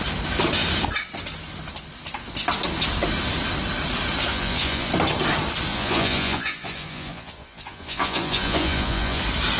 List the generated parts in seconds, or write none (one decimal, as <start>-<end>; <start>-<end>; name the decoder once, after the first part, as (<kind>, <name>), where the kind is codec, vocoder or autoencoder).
4.3-4.9 (vocoder, Vocos); 5.7-9.2